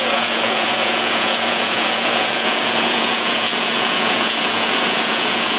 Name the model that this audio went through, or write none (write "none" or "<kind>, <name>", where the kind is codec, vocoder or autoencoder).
vocoder, Vocos